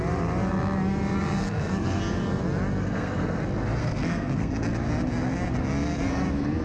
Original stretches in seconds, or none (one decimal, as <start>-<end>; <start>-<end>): 0.0-1.4; 2.0-2.8; 3.4-3.8; 4.5-6.6